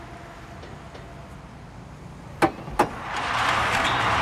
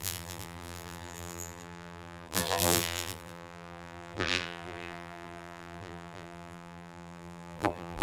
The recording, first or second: first